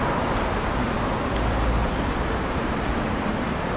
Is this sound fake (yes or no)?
yes